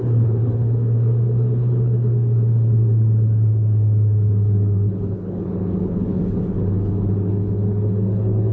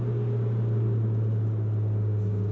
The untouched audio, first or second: second